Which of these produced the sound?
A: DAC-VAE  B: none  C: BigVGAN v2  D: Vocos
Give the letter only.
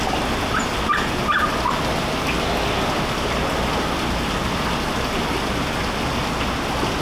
B